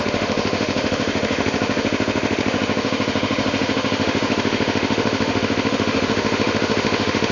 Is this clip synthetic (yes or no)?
yes